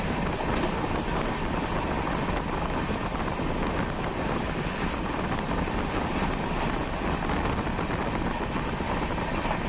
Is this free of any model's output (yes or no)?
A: yes